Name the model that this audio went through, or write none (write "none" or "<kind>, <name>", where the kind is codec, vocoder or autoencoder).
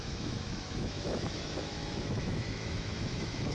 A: autoencoder, DAC-VAE